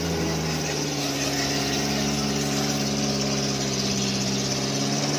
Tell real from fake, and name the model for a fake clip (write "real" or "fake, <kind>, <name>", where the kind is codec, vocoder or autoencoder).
real